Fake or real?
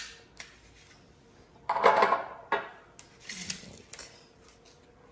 real